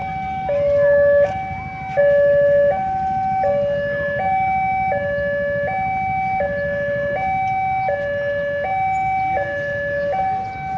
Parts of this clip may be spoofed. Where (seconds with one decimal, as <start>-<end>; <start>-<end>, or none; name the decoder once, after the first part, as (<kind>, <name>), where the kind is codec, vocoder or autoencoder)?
none